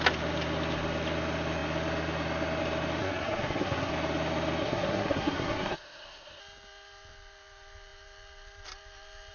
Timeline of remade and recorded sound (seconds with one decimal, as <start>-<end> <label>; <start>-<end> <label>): 0.0-3.0 recorded; 3.0-3.9 remade; 3.9-4.6 recorded; 4.6-6.4 remade; 6.4-9.3 recorded